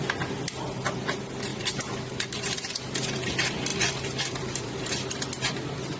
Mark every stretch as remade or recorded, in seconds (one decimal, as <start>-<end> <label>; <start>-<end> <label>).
0.0-1.5 recorded; 1.5-3.3 remade; 3.3-3.7 recorded; 3.7-4.9 remade; 4.9-6.0 recorded